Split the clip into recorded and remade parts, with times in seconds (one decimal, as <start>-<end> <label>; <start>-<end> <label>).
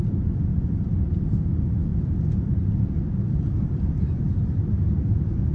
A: 0.0-0.5 recorded; 0.5-1.1 remade; 1.1-1.9 recorded; 1.9-5.5 remade